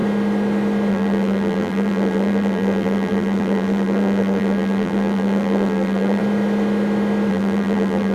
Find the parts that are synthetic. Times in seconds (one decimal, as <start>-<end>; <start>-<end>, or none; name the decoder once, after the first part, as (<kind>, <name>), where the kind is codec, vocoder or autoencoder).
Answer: 0.9-6.2 (vocoder, BigVGAN v2); 7.3-8.1